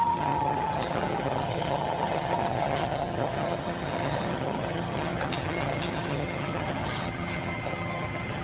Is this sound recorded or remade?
remade